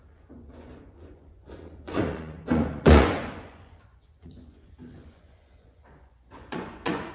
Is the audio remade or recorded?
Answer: remade